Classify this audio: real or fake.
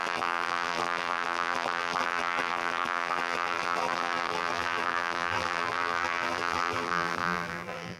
fake